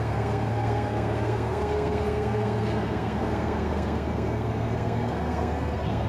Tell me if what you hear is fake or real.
fake